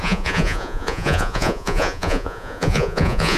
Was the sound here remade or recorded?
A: remade